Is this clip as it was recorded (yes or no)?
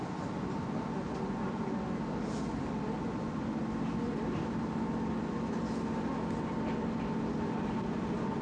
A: yes